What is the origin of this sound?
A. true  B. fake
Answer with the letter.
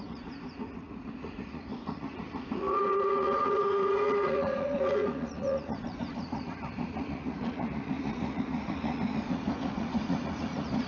B